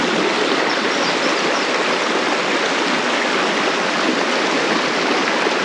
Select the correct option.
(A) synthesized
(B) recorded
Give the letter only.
B